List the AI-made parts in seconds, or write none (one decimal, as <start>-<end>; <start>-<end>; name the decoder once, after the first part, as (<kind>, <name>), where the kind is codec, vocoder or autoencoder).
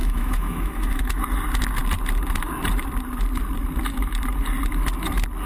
0.0-1.2 (autoencoder, DAC-VAE)